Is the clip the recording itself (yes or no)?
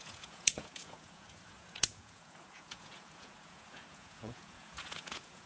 no